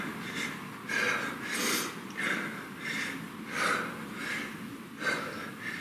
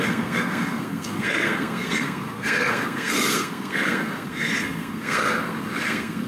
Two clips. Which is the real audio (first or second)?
first